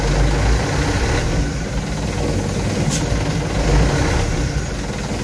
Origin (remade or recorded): recorded